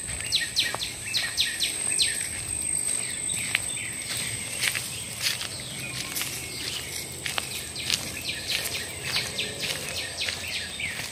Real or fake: real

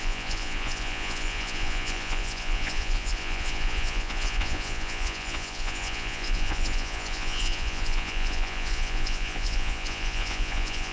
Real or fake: fake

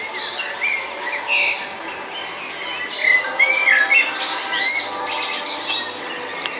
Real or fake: real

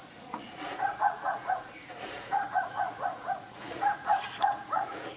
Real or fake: fake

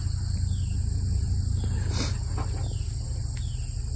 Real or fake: real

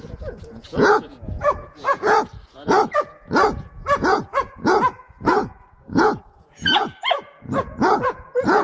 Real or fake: fake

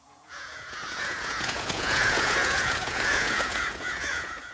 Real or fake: fake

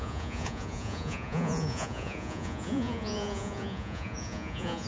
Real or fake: fake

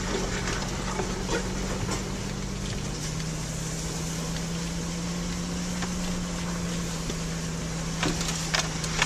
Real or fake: real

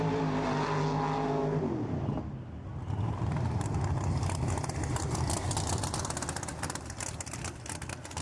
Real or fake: real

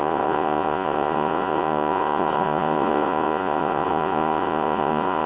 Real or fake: fake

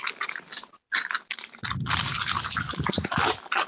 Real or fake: real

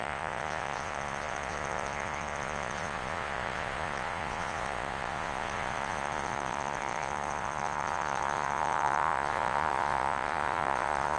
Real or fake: fake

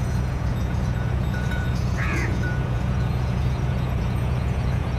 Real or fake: fake